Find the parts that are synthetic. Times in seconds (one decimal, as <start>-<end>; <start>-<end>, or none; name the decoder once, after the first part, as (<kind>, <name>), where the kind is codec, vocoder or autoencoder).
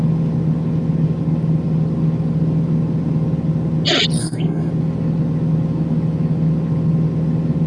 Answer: 4.2-4.7 (codec, SNAC)